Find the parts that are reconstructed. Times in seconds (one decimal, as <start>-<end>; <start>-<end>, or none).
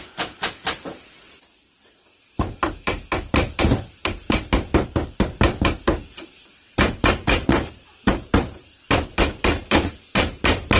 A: 4.2-8.8